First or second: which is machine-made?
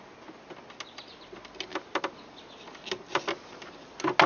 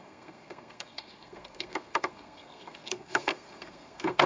second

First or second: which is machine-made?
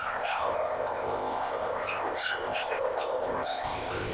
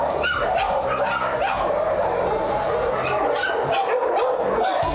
first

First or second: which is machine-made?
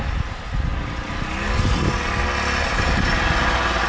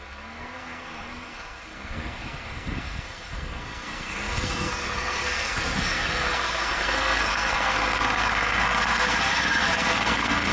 second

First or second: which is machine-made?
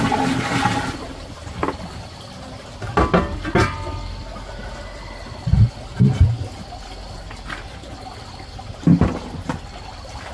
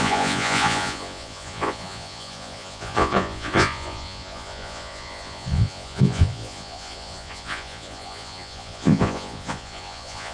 second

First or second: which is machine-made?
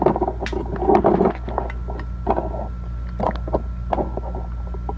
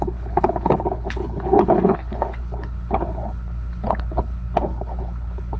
second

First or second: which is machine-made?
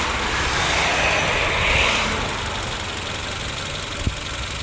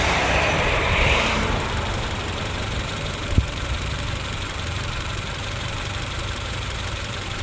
second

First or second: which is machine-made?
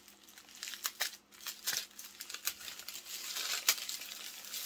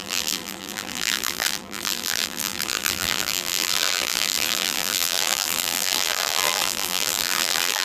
second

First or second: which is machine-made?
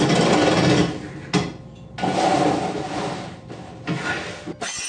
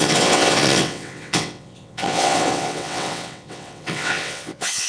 second